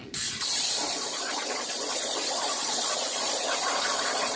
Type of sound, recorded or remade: remade